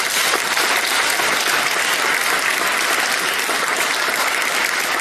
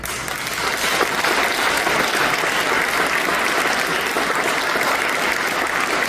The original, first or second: second